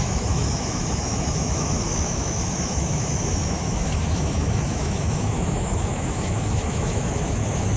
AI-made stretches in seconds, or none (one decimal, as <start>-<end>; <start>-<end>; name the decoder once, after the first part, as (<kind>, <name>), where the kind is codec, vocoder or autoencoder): 0.0-7.8 (autoencoder, DAC-VAE)